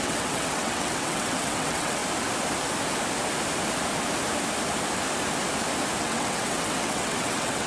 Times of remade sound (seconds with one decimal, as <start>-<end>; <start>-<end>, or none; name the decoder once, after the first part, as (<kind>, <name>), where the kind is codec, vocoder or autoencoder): 0.0-2.0 (vocoder, WaveNeXt); 6.0-7.7